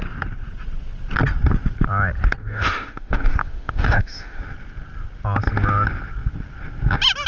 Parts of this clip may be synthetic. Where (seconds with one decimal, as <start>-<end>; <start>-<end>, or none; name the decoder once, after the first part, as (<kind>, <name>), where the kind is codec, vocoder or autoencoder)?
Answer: 2.4-4.4 (autoencoder, DAC-VAE)